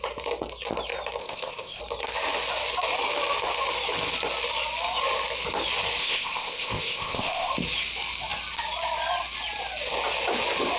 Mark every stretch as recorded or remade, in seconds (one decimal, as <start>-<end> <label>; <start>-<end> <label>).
0.0-1.2 recorded; 1.2-1.8 remade; 1.8-6.0 recorded; 6.0-7.5 remade; 7.5-10.8 recorded